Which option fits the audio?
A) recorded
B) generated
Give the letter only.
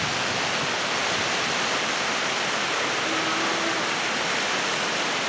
A